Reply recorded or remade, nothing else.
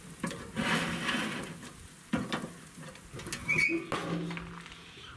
recorded